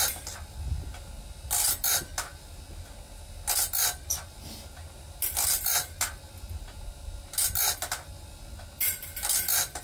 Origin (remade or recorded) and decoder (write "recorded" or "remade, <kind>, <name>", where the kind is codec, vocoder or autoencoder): recorded